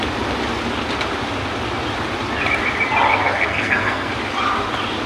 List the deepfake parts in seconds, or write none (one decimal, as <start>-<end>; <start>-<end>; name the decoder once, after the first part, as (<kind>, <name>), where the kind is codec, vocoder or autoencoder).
3.1-4.1 (codec, SNAC)